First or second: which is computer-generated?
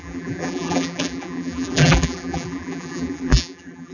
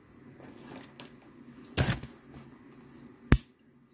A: first